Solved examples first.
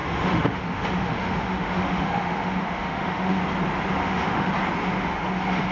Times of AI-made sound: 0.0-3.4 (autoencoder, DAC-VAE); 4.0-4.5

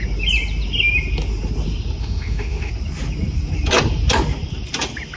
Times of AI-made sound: 2.0-2.7 (autoencoder, DAC-VAE)

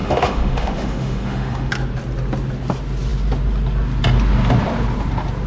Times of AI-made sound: 0.0-1.7 (autoencoder, DAC-VAE)

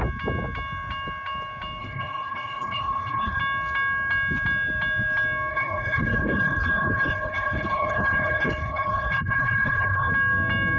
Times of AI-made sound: 1.8-3.4 (codec, HILCodec); 5.5-10.1